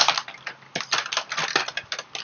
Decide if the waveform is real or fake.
real